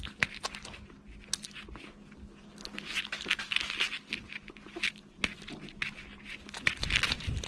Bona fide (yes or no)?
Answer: yes